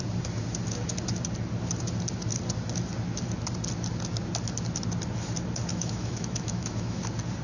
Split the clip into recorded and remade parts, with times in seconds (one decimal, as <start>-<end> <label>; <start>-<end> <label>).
0.0-5.7 recorded; 5.7-7.0 remade; 7.0-7.4 recorded